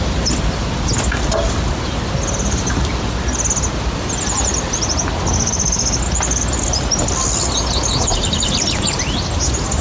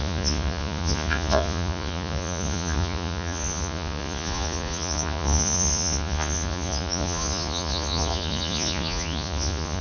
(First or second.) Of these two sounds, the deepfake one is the second